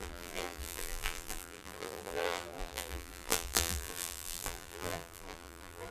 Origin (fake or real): fake